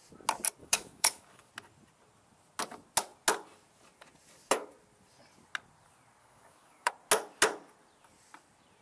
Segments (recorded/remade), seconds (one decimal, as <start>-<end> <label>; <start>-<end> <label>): 0.0-0.6 recorded; 0.6-1.5 remade; 1.5-6.2 recorded; 6.2-6.9 remade; 6.9-8.8 recorded